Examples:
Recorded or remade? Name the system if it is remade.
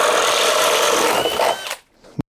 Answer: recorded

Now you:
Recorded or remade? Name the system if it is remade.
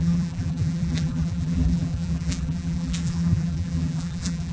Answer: remade, vocoder, BigVGAN v2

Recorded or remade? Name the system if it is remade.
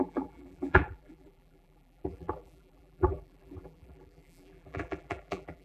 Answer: remade, vocoder, BigVGAN v2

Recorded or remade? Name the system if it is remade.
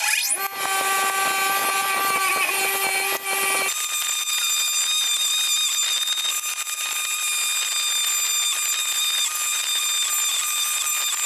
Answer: recorded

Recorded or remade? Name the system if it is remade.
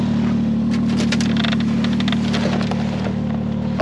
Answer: recorded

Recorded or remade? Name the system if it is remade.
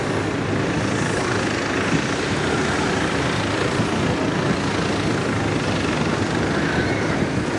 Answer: recorded